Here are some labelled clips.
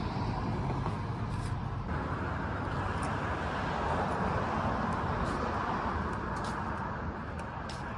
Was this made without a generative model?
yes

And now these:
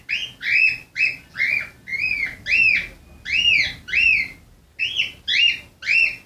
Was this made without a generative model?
yes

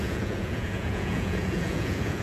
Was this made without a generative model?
no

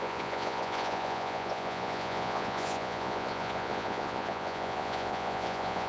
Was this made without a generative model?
no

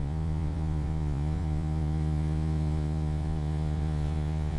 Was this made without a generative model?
no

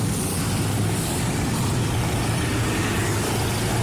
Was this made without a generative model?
yes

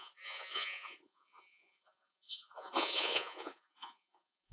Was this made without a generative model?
no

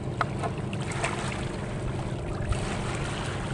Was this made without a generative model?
yes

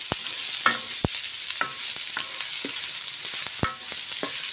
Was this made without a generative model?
yes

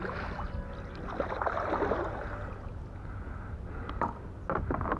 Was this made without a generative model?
yes